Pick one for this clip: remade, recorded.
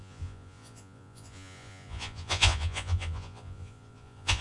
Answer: remade